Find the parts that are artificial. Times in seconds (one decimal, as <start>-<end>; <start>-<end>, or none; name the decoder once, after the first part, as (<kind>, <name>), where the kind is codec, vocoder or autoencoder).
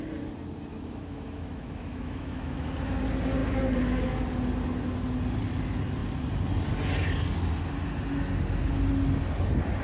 0.7-2.7 (autoencoder, DAC-VAE)